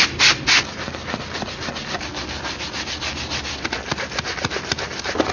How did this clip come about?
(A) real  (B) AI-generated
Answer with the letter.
A